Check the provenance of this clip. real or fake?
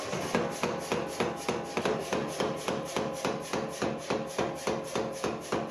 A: real